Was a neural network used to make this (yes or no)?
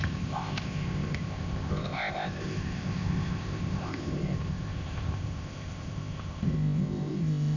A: yes